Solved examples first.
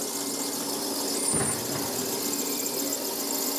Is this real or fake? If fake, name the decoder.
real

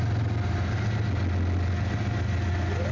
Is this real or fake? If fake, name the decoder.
real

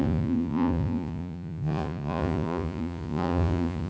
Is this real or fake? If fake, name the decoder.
fake, vocoder, Vocos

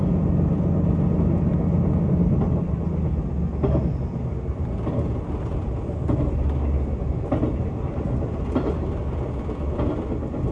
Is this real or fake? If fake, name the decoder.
real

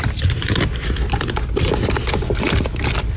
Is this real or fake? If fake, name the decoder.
real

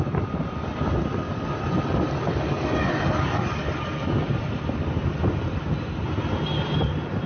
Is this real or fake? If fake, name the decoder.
real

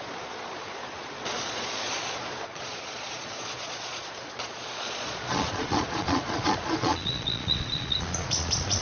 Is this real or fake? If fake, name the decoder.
fake, vocoder, Vocos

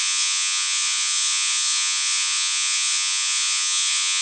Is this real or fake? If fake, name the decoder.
fake, vocoder, Vocos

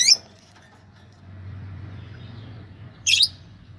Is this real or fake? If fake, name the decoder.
fake, vocoder, Vocos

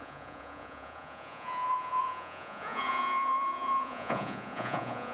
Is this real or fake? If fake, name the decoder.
fake, vocoder, Vocos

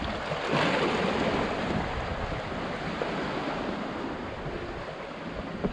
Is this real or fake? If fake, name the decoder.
real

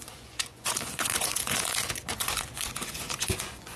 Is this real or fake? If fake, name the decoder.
fake, vocoder, Vocos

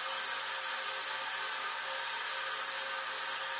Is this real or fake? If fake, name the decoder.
real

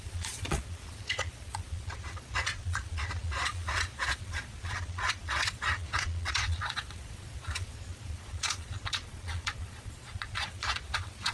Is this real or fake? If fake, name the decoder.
fake, vocoder, Vocos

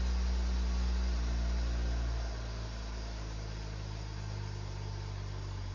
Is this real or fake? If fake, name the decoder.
real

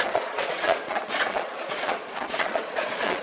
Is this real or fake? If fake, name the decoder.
fake, vocoder, Vocos